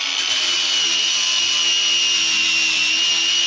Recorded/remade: remade